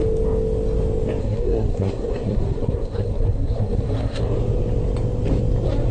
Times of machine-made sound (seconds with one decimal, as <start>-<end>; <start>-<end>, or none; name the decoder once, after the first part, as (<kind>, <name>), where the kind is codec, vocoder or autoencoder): 1.2-4.2 (codec, SNAC)

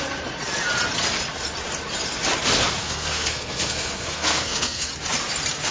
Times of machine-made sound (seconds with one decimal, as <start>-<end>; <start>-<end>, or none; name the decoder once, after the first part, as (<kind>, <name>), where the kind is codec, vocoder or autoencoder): 2.8-4.9 (codec, SNAC)

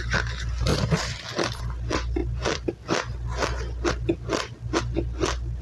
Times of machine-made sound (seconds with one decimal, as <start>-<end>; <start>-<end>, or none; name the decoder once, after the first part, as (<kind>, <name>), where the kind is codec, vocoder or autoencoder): 0.7-1.6 (vocoder, BigVGAN v2); 2.2-3.0

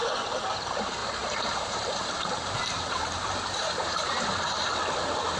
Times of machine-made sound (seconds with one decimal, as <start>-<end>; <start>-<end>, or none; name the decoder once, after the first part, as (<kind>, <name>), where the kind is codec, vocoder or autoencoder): 1.0-4.2 (vocoder, BigVGAN v2)

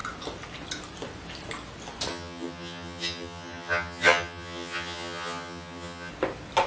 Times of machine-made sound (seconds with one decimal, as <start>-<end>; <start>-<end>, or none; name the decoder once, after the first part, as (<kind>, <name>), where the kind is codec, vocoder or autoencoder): 2.1-6.1 (vocoder, HiFi-GAN)